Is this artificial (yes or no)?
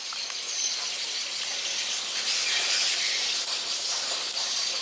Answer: yes